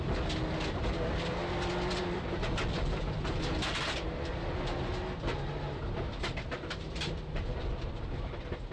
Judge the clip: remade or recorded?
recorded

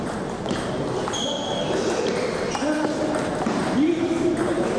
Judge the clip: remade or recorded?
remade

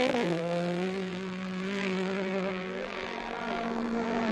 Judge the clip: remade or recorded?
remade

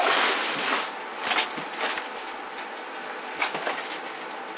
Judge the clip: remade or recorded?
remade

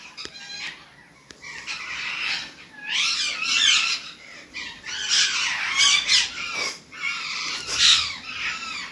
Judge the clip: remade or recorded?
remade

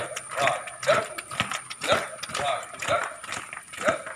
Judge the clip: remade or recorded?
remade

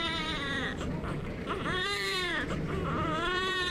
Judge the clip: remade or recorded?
remade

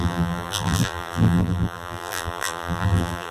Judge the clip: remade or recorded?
remade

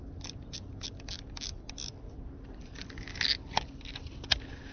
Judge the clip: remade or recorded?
recorded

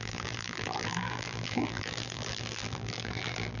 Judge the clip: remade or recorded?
remade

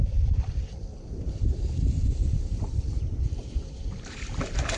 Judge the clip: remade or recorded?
remade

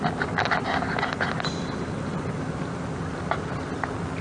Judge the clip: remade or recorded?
recorded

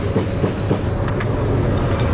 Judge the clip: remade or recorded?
recorded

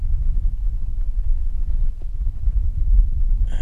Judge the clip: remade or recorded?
remade